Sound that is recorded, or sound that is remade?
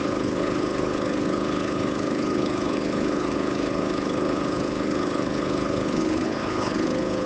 remade